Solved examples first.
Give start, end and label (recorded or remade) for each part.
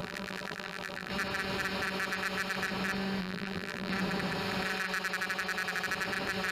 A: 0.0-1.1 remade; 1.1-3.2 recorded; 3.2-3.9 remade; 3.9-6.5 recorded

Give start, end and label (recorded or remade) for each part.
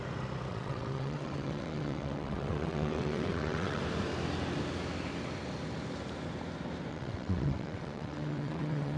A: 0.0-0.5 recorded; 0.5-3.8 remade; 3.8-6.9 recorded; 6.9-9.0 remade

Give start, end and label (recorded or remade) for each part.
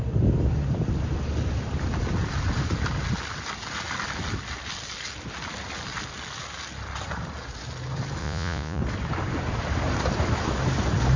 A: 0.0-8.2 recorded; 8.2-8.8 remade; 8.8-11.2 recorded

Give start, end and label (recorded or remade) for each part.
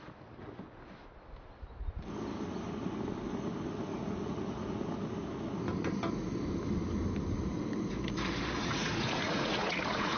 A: 0.0-3.9 recorded; 3.9-4.8 remade; 4.8-8.6 recorded; 8.6-10.2 remade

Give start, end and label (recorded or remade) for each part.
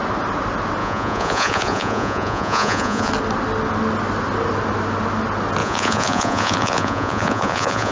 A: 0.0-0.8 recorded; 0.8-3.1 remade; 3.1-5.6 recorded; 5.6-7.9 remade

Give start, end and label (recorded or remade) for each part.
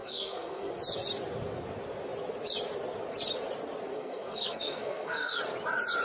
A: 0.0-0.7 remade; 0.7-3.9 recorded; 3.9-5.4 remade; 5.4-6.0 recorded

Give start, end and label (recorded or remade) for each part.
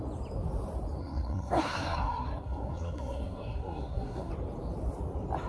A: 0.0-1.0 recorded; 1.0-4.3 remade; 4.3-5.5 recorded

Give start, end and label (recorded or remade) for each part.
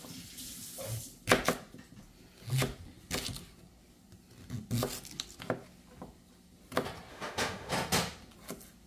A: 0.0-7.1 recorded; 7.1-7.7 remade; 7.7-8.9 recorded